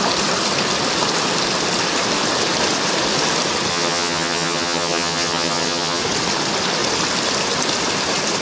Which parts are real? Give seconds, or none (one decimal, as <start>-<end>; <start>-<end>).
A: 0.0-3.7; 6.0-8.4